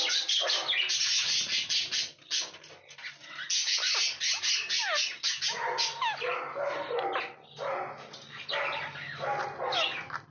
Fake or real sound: real